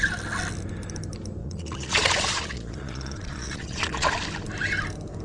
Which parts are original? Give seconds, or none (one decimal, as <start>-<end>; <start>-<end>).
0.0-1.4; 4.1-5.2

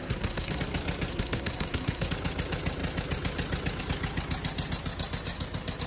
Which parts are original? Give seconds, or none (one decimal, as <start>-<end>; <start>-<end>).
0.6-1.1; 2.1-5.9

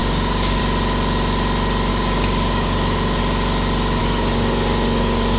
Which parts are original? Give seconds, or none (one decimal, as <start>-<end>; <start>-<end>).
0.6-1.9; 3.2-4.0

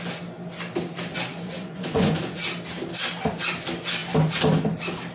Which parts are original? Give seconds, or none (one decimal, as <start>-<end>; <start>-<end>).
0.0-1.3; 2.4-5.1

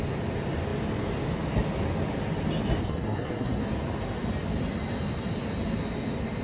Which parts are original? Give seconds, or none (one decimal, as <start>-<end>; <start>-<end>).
0.0-2.8; 3.6-6.4

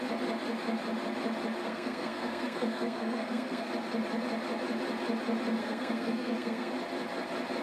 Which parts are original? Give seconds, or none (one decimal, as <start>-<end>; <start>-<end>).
0.0-1.6; 3.7-5.6; 6.7-7.6